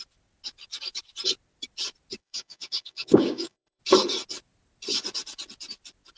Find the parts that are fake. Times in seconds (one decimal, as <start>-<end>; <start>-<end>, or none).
2.2-3.8